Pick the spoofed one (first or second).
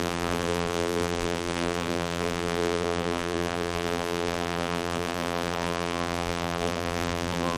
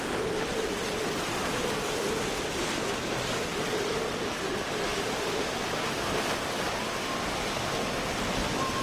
first